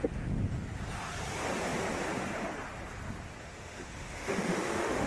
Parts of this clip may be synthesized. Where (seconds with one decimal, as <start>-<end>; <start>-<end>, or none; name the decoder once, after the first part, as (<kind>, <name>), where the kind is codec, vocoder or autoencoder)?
3.4-5.1 (autoencoder, DAC-VAE)